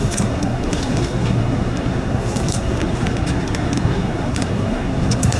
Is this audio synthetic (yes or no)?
yes